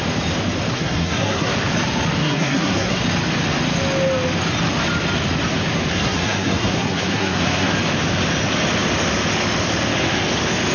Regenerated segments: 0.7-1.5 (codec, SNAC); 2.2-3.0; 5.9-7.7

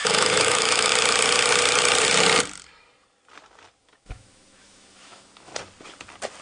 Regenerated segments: 0.0-0.9 (autoencoder, DAC-VAE); 3.8-5.5